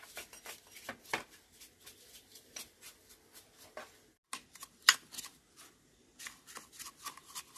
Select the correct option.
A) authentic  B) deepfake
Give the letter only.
A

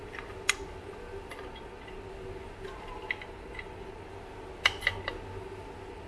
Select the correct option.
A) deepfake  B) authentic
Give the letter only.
B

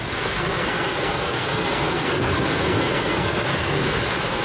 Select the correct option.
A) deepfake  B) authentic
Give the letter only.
A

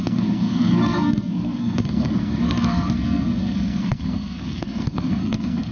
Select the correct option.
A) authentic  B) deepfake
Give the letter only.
B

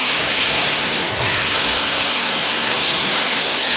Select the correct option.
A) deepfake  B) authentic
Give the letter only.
A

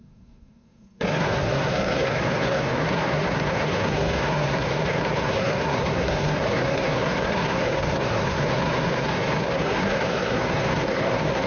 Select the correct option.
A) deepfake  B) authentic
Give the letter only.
A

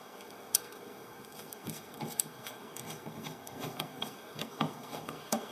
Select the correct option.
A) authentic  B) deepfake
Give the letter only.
B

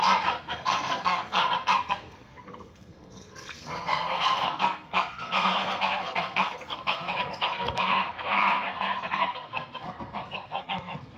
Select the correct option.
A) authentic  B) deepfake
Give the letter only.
B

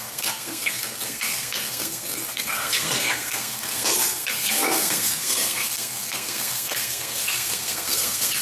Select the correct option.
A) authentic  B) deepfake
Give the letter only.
B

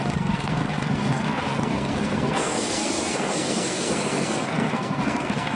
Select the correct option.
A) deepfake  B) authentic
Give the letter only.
A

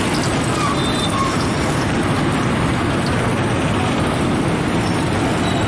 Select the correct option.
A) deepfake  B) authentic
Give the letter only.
B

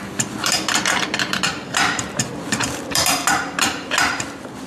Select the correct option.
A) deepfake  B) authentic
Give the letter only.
B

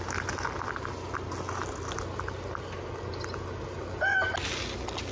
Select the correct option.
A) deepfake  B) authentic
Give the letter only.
B